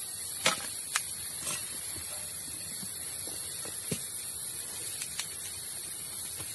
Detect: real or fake real